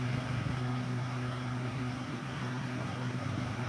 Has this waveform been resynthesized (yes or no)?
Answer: yes